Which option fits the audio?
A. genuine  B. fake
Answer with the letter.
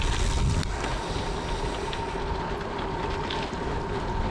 A